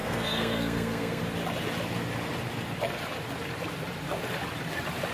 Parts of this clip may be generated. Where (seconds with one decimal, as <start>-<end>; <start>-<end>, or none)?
0.0-1.2